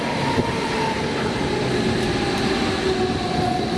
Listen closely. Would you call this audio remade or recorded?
recorded